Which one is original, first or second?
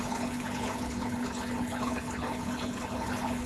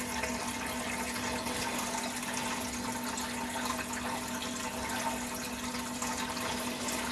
second